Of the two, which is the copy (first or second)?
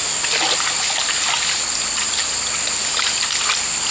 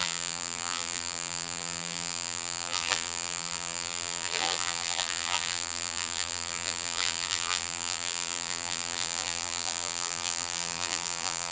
second